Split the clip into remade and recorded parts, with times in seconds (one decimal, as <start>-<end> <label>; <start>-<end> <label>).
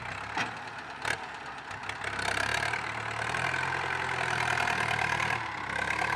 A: 0.0-6.2 recorded